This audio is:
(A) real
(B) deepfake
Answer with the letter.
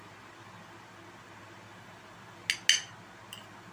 A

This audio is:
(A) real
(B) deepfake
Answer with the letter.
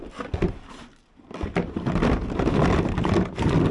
A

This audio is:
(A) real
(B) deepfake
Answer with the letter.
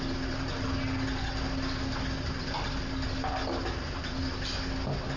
A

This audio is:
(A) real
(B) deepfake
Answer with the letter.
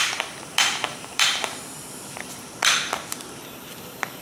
B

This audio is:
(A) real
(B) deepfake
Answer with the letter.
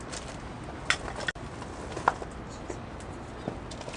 A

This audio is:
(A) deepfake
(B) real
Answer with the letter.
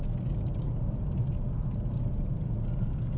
B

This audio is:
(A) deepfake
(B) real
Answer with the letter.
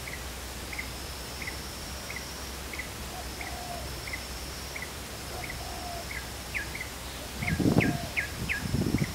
B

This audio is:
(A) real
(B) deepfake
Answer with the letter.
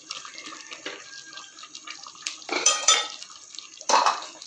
B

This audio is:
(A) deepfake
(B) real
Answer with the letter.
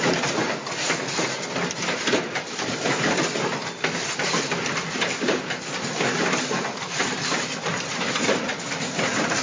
A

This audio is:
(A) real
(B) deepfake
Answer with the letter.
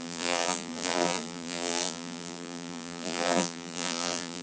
B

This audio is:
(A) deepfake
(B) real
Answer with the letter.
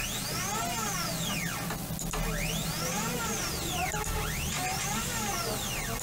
B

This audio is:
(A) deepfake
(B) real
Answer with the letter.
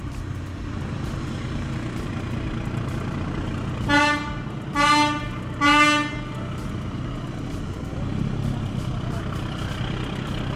B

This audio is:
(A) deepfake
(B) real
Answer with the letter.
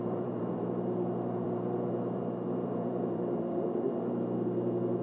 A